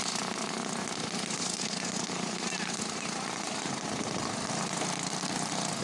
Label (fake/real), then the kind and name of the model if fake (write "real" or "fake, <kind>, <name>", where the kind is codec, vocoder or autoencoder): real